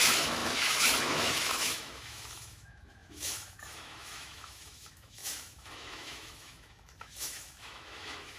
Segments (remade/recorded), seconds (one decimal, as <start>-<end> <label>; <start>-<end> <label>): 0.0-8.4 remade